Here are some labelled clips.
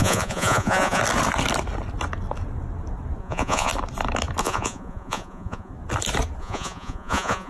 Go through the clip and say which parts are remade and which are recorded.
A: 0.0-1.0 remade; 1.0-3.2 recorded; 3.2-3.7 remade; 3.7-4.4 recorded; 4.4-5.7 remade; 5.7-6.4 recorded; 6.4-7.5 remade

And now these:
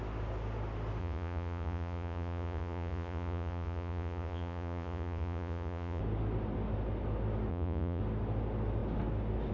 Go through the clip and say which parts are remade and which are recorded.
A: 0.0-1.0 recorded; 1.0-6.0 remade; 6.0-7.5 recorded; 7.5-8.0 remade; 8.0-9.5 recorded

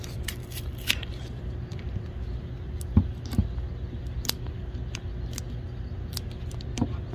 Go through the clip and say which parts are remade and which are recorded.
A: 0.0-1.9 remade; 1.9-7.1 recorded

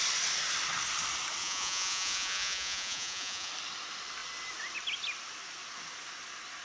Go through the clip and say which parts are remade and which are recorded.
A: 0.0-1.4 recorded; 1.4-3.5 remade; 3.5-6.6 recorded

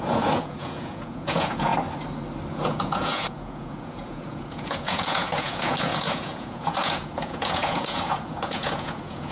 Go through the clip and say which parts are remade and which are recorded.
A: 0.0-1.7 remade; 1.7-2.5 recorded; 2.5-9.3 remade

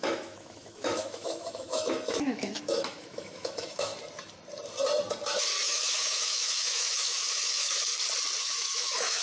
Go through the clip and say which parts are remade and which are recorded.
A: 0.0-3.9 remade; 3.9-5.6 recorded; 5.6-7.9 remade; 7.9-8.4 recorded; 8.4-9.2 remade

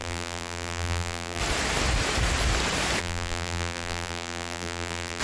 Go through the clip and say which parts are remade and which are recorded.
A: 0.0-1.4 remade; 1.4-3.0 recorded; 3.0-5.2 remade

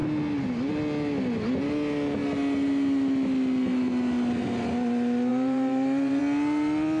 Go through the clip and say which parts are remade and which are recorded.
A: 0.0-5.3 recorded; 5.3-6.2 remade; 6.2-7.0 recorded